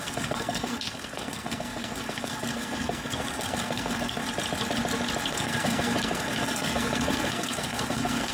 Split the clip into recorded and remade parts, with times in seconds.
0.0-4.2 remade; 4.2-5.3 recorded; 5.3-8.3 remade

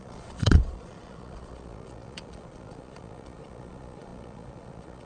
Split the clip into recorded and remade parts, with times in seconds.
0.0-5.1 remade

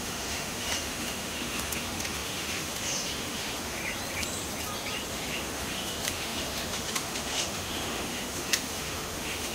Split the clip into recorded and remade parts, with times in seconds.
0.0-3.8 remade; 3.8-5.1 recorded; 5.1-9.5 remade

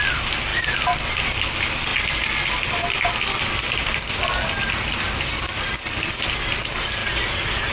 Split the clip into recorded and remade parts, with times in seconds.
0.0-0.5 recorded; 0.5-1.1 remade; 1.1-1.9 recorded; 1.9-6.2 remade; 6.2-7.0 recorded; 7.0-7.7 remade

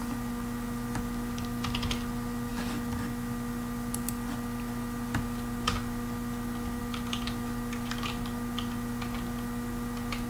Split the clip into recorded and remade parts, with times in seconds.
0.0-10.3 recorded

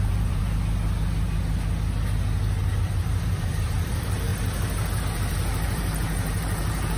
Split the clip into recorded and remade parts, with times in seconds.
0.0-0.4 remade; 0.4-2.6 recorded; 2.6-4.3 remade; 4.3-5.0 recorded; 5.0-7.0 remade

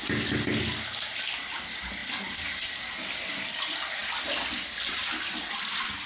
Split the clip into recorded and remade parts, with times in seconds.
0.0-6.1 recorded

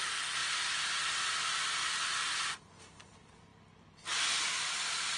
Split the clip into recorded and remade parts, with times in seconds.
0.0-0.4 remade; 0.4-1.2 recorded; 1.2-5.2 remade